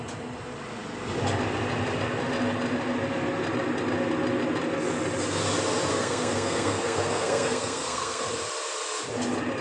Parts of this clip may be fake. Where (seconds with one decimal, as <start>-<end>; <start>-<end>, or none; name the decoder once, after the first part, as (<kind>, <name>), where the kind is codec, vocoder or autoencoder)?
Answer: 5.9-8.3 (codec, SNAC)